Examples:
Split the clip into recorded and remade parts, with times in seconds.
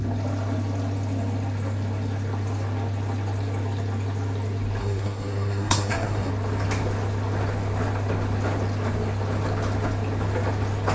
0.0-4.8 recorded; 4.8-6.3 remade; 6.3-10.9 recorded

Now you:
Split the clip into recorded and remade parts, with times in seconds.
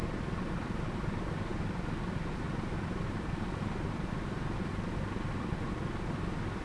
0.0-6.6 recorded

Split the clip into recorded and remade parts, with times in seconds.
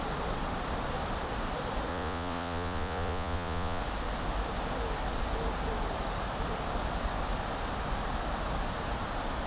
0.0-1.9 recorded; 1.9-3.8 remade; 3.8-9.5 recorded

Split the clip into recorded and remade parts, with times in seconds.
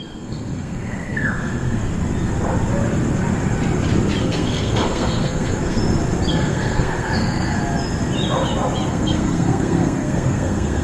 0.0-1.8 remade; 1.8-4.2 recorded; 4.2-5.8 remade; 5.8-6.3 recorded; 6.3-7.6 remade; 7.6-8.9 recorded; 8.9-10.8 remade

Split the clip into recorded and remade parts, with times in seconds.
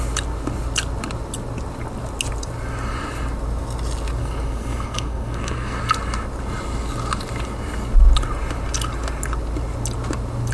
0.0-4.2 recorded; 4.2-5.8 remade; 5.8-10.5 recorded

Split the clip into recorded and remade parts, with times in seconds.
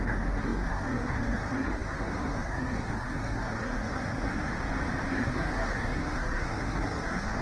0.0-4.5 remade; 4.5-5.1 recorded; 5.1-7.4 remade